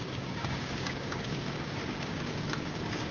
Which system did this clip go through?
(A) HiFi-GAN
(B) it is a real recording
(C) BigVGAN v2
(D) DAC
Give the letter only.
D